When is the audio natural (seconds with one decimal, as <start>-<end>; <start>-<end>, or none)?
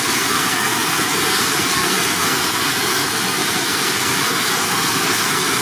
none